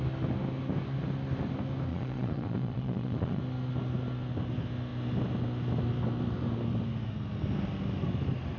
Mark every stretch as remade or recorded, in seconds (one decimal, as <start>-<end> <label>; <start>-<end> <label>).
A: 0.0-1.9 recorded; 1.9-3.4 remade; 3.4-8.6 recorded